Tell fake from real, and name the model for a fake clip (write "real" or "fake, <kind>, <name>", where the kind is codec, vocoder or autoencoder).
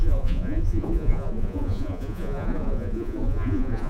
fake, vocoder, Vocos